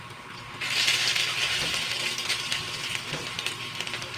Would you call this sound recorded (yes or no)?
yes